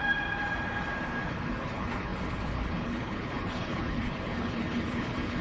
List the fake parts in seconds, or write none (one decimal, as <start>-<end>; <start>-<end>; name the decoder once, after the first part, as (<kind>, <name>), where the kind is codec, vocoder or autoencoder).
1.3-5.4 (codec, HILCodec)